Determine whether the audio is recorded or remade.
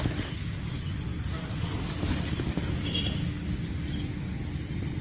recorded